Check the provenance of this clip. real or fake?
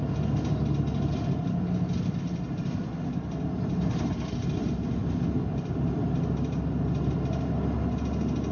real